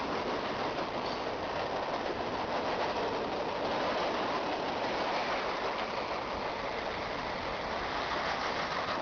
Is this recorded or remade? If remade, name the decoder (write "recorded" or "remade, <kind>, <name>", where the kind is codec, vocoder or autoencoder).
recorded